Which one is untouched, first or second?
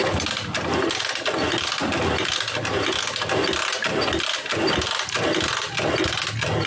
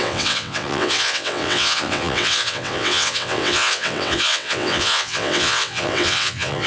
first